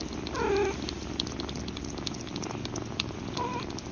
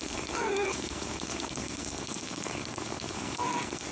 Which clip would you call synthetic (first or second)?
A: second